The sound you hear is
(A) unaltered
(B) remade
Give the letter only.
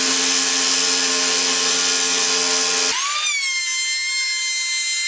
A